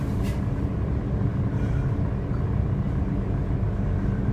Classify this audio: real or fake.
real